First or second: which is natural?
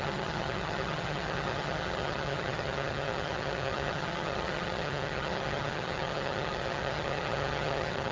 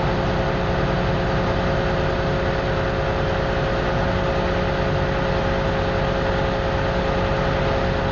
second